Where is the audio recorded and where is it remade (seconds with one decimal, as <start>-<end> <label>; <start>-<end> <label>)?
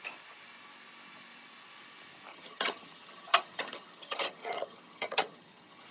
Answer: 0.0-2.3 recorded; 2.3-5.9 remade